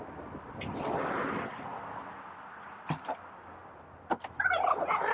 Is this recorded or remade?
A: recorded